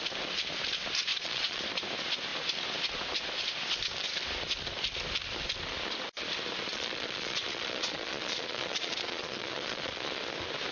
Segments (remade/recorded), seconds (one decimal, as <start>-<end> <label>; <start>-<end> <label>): 0.0-1.1 recorded; 1.1-1.6 remade; 1.6-6.7 recorded; 6.7-10.2 remade; 10.2-10.7 recorded